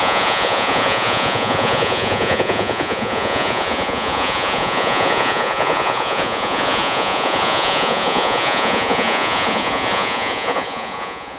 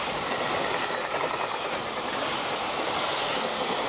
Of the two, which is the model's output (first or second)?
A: first